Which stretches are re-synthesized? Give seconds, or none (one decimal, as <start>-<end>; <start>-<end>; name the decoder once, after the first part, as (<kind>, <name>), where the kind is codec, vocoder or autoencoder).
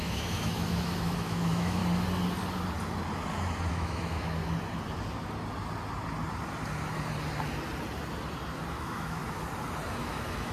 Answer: 0.0-1.8 (autoencoder, DAC-VAE); 3.7-4.4; 8.7-9.2; 9.9-10.5